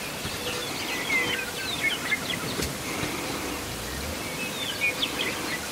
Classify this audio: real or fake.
real